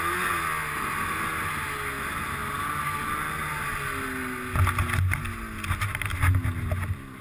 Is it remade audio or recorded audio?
recorded